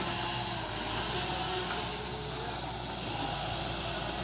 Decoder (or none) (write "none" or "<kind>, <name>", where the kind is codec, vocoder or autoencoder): none